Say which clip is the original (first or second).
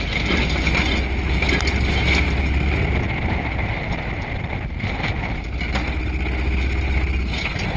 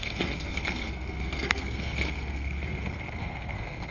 first